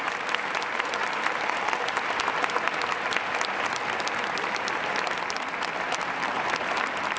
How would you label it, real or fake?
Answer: fake